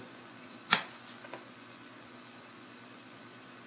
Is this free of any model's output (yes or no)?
no